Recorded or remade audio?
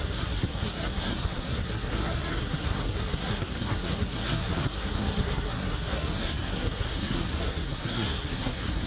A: remade